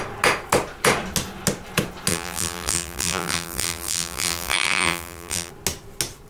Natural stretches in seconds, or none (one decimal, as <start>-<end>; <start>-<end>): 0.0-2.1; 5.5-6.3